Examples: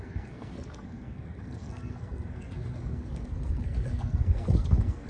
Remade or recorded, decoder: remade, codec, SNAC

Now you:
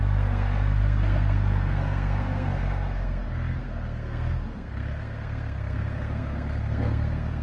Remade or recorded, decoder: remade, codec, SNAC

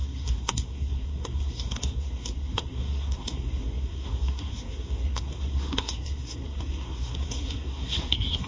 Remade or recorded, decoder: remade, codec, SNAC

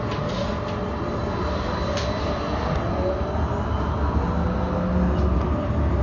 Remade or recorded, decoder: recorded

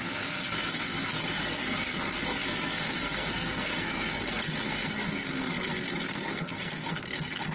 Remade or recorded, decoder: remade, codec, SNAC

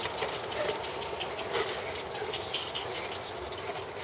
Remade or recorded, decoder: recorded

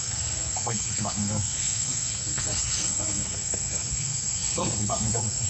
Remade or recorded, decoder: remade, codec, SNAC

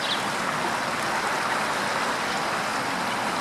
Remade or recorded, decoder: recorded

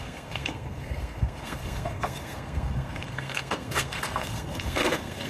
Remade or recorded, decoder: remade, codec, SNAC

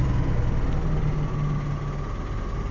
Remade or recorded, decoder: recorded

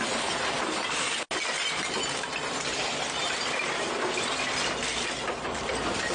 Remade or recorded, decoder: recorded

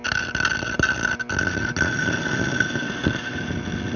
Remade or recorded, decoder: recorded